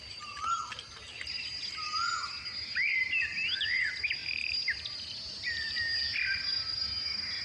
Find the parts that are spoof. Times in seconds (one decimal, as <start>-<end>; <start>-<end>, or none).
none